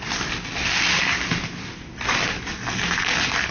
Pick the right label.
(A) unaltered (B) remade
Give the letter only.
A